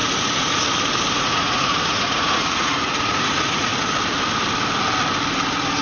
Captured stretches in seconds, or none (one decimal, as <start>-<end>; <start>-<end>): 0.0-1.2; 3.7-5.8